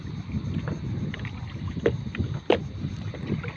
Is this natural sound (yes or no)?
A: yes